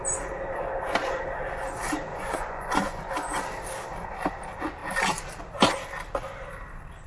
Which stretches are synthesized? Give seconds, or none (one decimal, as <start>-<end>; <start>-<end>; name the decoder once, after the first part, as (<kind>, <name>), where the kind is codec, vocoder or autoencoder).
2.1-3.0 (vocoder, Vocos)